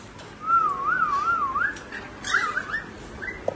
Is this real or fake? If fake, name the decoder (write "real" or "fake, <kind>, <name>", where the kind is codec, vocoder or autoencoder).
real